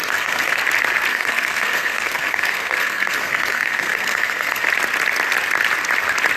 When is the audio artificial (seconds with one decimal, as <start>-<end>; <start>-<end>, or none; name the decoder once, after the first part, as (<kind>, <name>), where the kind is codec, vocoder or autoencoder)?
0.0-0.6 (codec, SNAC); 1.1-4.7